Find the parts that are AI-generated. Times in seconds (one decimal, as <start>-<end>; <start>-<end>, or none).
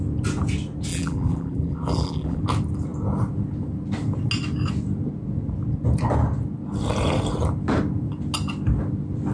0.9-2.4